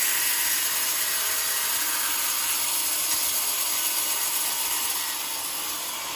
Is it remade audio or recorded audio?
recorded